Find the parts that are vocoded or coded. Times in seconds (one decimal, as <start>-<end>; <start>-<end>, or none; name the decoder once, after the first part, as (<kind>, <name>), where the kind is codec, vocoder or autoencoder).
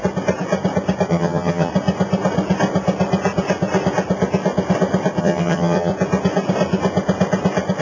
1.1-1.7 (vocoder, HiFi-GAN); 5.2-5.9